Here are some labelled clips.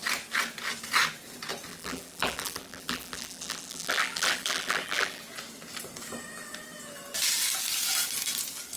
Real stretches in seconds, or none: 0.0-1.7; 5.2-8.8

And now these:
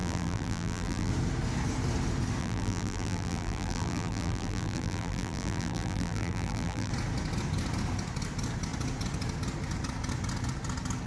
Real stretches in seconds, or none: 1.1-2.4; 6.9-11.1

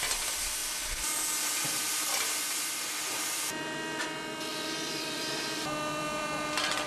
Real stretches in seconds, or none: 0.0-0.6; 4.0-4.5

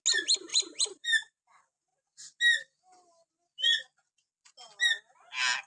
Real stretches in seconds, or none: 0.0-0.5; 1.4-5.7

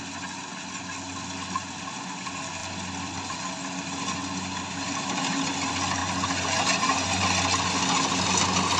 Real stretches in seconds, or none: 0.0-2.6; 3.4-8.8

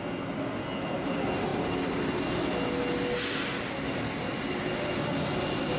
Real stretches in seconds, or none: 0.0-5.8

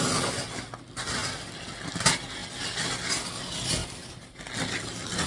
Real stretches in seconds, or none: 0.0-3.8; 4.4-5.3

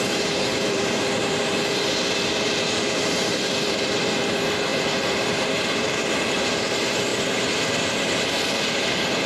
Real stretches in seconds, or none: none